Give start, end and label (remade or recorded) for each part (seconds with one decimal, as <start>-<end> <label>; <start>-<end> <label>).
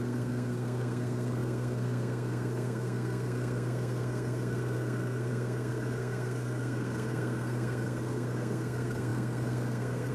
0.0-10.1 remade